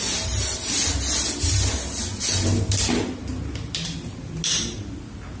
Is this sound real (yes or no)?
yes